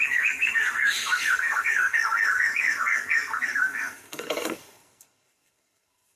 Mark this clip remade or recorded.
remade